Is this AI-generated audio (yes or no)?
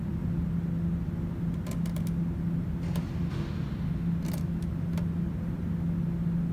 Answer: no